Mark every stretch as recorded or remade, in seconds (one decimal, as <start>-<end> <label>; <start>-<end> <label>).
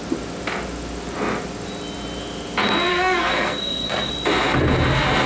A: 0.0-2.9 recorded; 2.9-4.1 remade; 4.1-5.3 recorded